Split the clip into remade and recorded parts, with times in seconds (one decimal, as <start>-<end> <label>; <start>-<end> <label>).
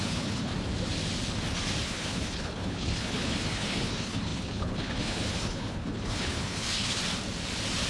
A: 0.0-0.5 remade; 0.5-1.8 recorded; 1.8-7.0 remade; 7.0-7.9 recorded